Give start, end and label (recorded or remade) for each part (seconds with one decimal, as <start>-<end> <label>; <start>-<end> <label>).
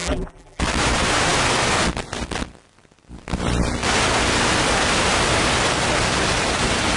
0.0-0.6 remade; 0.6-7.0 recorded